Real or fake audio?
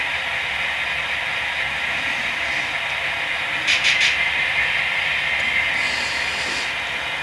real